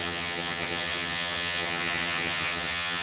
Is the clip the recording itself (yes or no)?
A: no